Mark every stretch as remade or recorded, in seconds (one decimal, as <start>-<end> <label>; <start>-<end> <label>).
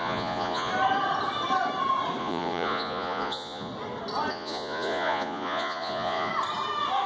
0.0-0.7 remade; 0.7-2.2 recorded; 2.2-3.7 remade; 3.7-4.3 recorded; 4.3-6.3 remade; 6.3-7.1 recorded